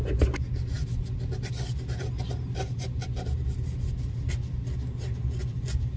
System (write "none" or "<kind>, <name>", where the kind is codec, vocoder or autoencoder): none